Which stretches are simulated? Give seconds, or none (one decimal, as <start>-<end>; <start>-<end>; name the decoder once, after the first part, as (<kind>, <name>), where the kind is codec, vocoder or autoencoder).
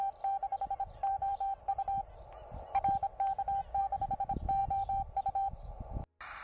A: none